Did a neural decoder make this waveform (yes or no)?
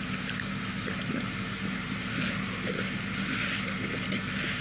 no